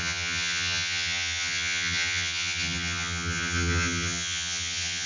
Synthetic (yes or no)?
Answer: yes